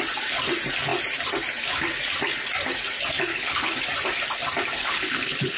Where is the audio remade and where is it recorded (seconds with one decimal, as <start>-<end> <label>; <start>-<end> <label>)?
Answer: 0.0-3.3 recorded; 3.3-3.8 remade; 3.8-4.8 recorded; 4.8-5.6 remade